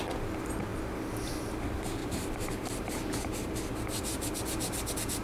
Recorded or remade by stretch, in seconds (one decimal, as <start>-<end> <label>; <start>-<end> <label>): 0.0-2.0 recorded; 2.0-3.3 remade; 3.3-5.2 recorded